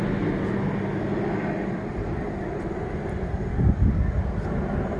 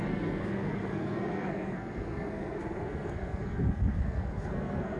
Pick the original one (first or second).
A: first